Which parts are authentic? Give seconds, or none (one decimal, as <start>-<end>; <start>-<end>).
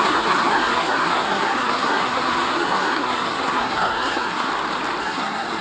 4.5-5.0